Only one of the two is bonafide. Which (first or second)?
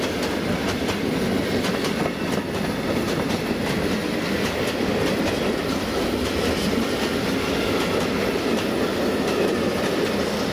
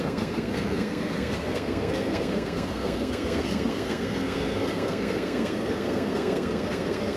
first